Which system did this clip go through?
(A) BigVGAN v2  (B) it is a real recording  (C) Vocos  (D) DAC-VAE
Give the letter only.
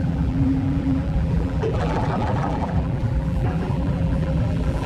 A